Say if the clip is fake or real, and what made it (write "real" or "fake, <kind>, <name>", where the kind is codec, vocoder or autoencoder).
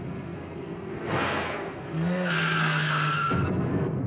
fake, codec, SNAC